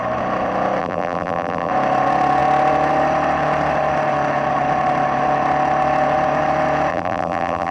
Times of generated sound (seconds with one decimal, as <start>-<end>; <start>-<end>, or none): 0.8-1.7; 6.9-7.7